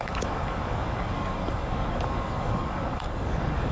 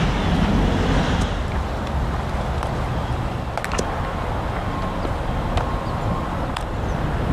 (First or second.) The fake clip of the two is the first